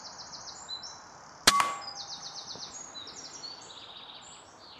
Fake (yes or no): no